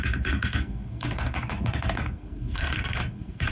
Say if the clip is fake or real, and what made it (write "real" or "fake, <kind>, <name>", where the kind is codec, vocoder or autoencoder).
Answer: fake, codec, SNAC